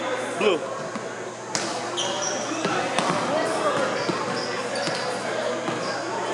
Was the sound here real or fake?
real